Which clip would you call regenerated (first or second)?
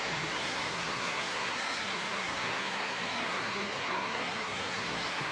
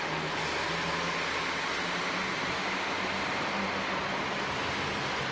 first